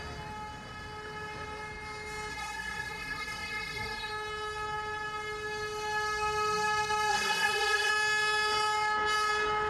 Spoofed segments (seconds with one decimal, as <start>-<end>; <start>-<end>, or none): 2.3-4.1; 7.1-7.9